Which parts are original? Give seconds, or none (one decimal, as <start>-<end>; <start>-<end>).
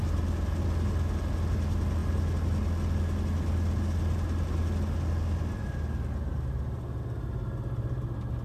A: 0.0-8.4